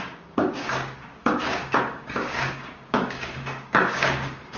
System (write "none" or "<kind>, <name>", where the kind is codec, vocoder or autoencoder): codec, DAC